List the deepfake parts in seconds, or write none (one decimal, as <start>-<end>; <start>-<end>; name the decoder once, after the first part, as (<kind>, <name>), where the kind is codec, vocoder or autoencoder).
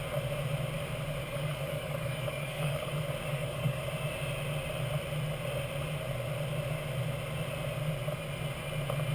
1.2-2.9 (codec, DAC); 3.3-3.8